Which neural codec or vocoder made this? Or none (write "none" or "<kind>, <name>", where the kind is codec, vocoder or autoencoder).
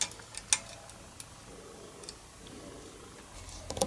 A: none